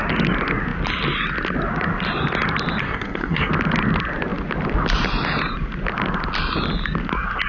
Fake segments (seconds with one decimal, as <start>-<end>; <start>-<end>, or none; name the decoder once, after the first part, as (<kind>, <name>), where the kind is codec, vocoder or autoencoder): 2.8-3.5 (codec, SNAC)